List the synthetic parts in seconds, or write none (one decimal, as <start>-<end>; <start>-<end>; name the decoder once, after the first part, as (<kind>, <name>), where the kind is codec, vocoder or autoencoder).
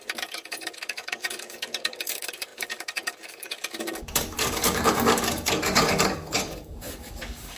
0.0-7.6 (codec, DAC)